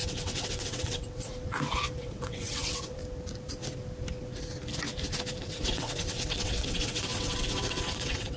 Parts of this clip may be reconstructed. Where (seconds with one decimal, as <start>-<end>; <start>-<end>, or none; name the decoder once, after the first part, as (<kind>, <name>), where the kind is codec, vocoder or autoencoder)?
0.0-1.3 (vocoder, WaveNeXt); 2.0-3.0; 5.4-8.4